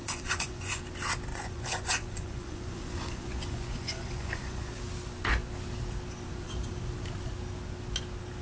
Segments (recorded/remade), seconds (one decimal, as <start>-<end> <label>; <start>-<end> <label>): 0.0-0.8 remade; 0.8-1.3 recorded; 1.3-4.8 remade; 4.8-8.4 recorded